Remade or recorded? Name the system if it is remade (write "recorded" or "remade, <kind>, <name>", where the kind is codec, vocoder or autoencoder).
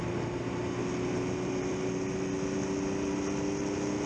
recorded